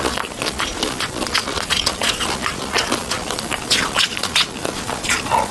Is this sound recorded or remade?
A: remade